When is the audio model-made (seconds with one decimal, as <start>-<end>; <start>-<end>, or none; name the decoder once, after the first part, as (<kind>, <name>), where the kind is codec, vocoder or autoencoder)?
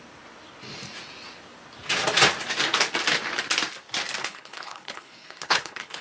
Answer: 4.2-6.0 (codec, HILCodec)